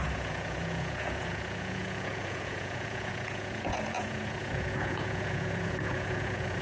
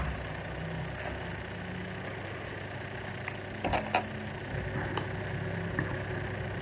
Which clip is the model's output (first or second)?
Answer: first